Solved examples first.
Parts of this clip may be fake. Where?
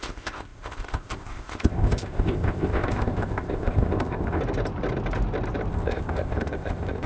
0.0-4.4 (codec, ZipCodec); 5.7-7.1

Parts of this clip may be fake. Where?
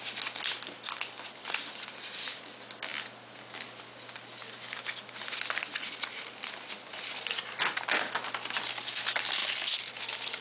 none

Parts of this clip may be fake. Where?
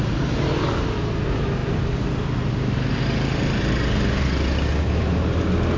none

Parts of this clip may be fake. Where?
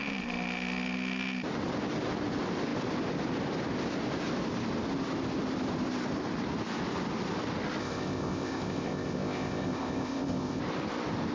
7.8-10.6 (codec, ZipCodec)